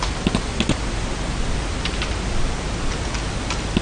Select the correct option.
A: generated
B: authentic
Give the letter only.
B